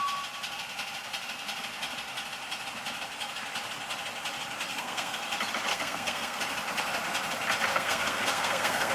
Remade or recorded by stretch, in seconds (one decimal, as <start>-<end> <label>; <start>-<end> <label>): 0.0-4.7 recorded; 4.7-5.2 remade; 5.2-5.7 recorded; 5.7-6.4 remade; 6.4-7.7 recorded; 7.7-8.9 remade